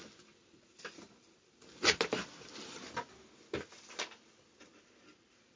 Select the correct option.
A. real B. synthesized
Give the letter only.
A